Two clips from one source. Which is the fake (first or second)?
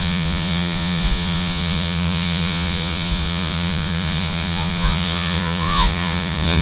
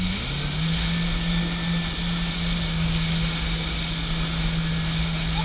first